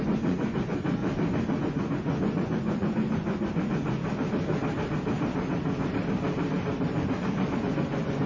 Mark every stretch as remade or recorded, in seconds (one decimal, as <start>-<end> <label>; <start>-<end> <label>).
0.0-1.0 remade; 1.0-1.6 recorded; 1.6-4.0 remade; 4.0-7.6 recorded; 7.6-8.3 remade